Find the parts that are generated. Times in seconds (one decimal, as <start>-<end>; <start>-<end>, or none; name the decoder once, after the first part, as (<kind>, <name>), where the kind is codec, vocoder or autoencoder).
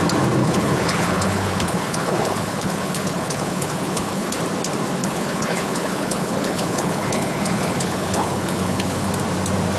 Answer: 0.4-4.4 (codec, HILCodec); 5.0-9.1